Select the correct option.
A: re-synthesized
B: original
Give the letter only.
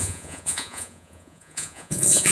A